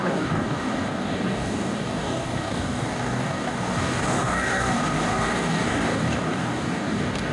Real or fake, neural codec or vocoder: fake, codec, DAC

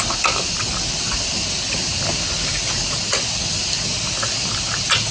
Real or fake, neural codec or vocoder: real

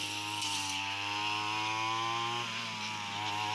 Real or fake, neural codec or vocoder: real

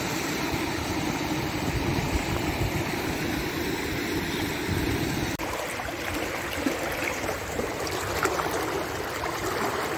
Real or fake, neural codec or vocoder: real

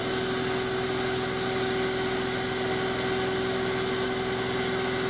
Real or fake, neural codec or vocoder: real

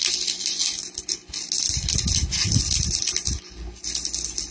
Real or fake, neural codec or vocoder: real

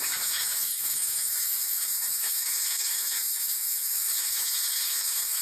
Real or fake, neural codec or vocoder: fake, autoencoder, DAC-VAE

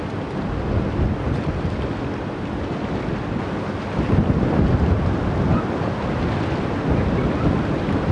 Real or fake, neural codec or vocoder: real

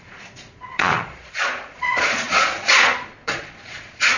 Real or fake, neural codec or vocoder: fake, vocoder, Vocos